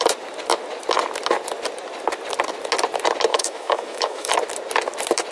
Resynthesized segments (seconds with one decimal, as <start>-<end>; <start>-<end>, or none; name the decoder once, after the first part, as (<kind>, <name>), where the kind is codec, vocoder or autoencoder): 3.3-4.3 (autoencoder, DAC-VAE)